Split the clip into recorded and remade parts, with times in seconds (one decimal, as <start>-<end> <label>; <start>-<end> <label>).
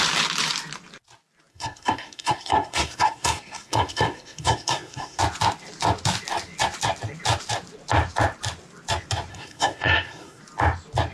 0.0-1.5 recorded; 1.5-5.2 remade; 5.2-9.3 recorded; 9.3-10.4 remade; 10.4-11.1 recorded